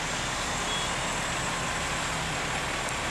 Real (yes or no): yes